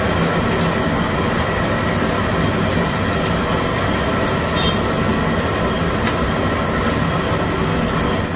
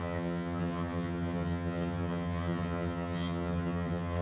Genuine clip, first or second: first